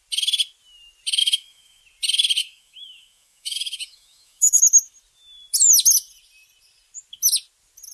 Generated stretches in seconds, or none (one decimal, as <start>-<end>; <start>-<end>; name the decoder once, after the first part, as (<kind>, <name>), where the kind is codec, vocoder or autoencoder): 1.2-1.8 (autoencoder, DAC-VAE); 2.4-4.6